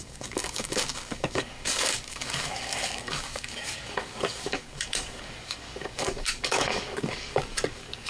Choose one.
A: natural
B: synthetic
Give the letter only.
B